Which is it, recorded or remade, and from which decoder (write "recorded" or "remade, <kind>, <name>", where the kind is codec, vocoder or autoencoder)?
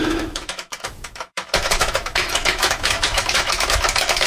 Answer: remade, autoencoder, DAC-VAE